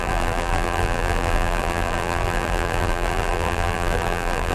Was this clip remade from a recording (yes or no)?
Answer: yes